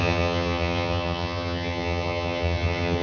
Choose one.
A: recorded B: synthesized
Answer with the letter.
B